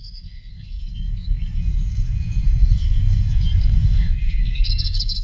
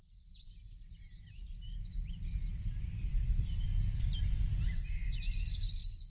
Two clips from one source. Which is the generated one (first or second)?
first